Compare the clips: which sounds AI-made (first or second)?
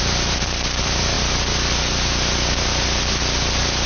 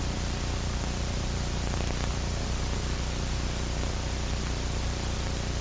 second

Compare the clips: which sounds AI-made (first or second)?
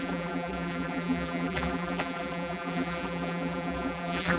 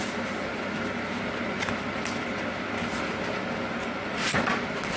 first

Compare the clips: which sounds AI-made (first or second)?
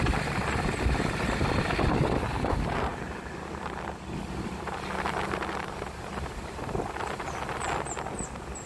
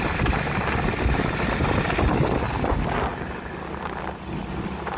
first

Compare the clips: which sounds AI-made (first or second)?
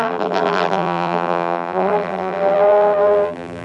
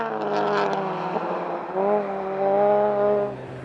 first